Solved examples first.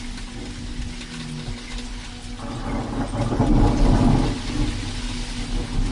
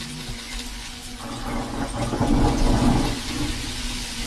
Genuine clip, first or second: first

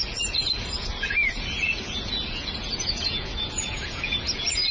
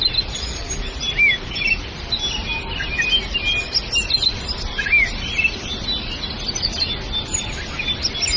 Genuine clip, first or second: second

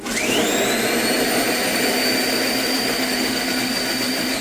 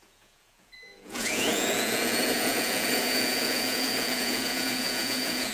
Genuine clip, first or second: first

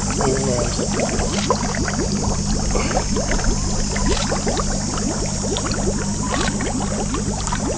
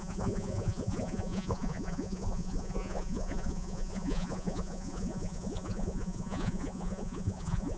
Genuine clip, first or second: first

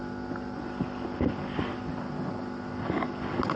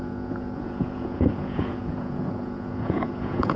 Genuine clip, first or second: first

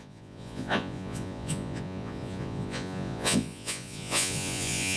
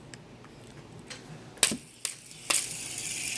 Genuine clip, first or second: second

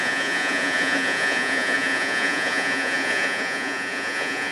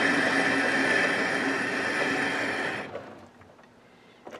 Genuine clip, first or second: second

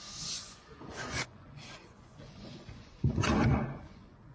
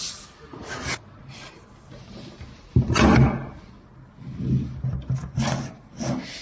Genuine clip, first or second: second